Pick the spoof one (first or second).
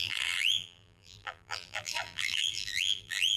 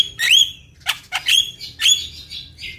first